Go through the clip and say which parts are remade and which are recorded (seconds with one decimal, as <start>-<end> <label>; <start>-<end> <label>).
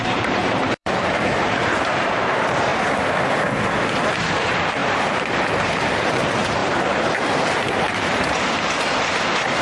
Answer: 0.0-2.7 remade; 2.7-4.1 recorded; 4.1-9.6 remade